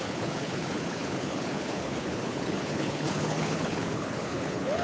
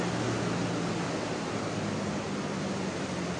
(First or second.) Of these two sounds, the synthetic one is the first